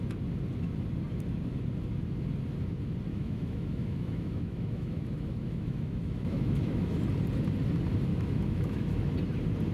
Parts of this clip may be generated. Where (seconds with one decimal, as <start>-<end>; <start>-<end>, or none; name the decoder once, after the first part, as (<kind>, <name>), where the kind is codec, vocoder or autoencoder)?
3.1-7.0 (autoencoder, DAC-VAE); 8.1-9.1